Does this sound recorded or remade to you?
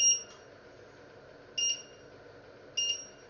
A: recorded